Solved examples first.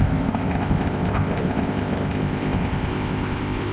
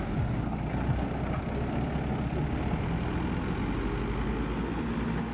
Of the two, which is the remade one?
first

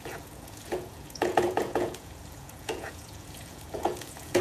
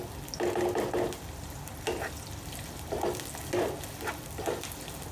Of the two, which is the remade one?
first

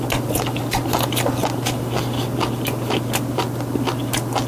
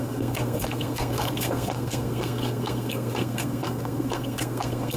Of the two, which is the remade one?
second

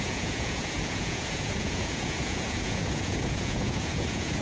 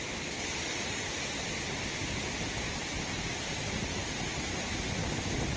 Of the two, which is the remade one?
first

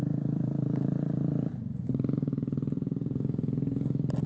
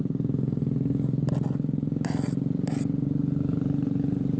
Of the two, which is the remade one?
first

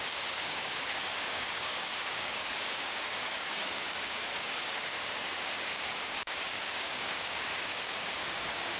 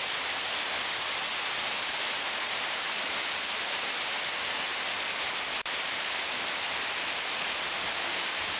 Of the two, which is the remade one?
first